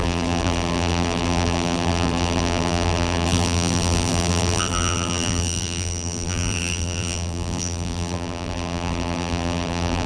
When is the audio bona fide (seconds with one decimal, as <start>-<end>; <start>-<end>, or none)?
none

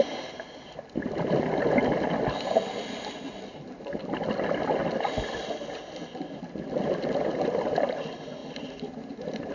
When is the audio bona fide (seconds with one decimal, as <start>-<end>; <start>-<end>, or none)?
0.0-8.4

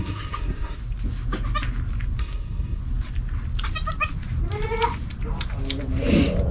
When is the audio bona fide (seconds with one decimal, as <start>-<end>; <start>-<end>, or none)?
0.8-2.2; 2.8-6.5